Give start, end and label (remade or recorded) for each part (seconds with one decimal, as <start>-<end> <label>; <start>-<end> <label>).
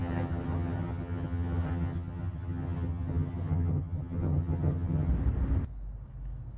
0.0-5.1 remade; 5.1-6.6 recorded